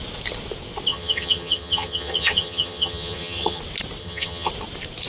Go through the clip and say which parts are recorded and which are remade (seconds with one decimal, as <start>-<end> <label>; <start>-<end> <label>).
0.0-0.9 recorded; 0.9-3.6 remade; 3.6-4.0 recorded; 4.0-4.5 remade; 4.5-5.1 recorded